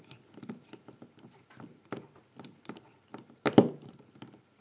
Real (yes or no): yes